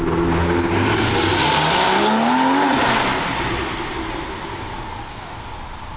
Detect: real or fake real